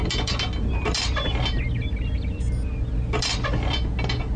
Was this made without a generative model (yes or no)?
yes